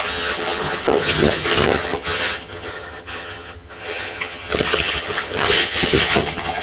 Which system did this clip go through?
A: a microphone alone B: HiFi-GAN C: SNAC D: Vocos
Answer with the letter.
B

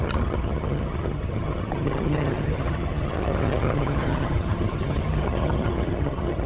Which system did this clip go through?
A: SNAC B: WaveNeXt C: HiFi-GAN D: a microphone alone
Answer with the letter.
C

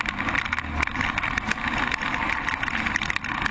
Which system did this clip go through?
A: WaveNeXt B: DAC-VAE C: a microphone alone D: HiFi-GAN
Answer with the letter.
C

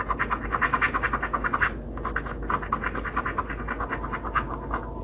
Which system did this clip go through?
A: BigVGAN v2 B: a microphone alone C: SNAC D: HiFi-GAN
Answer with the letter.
B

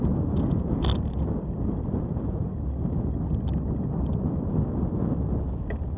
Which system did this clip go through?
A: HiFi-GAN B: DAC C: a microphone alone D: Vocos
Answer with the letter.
C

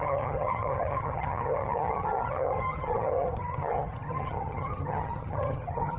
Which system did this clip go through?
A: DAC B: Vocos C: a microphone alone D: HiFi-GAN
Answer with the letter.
D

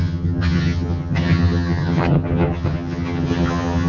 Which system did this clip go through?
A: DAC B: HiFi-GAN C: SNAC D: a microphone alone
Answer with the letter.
B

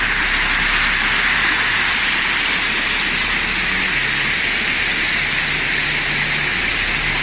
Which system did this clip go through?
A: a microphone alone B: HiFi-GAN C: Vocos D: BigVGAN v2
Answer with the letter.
A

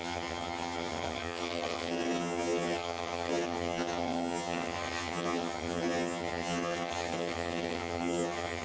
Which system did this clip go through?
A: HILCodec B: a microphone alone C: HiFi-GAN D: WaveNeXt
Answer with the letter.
C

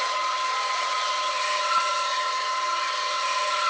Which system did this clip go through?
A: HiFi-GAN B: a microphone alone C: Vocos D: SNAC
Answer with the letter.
A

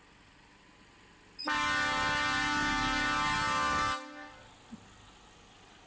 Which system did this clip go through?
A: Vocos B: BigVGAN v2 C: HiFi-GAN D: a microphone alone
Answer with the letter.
D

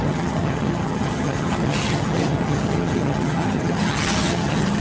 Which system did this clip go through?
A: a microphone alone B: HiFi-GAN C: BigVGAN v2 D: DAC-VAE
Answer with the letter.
B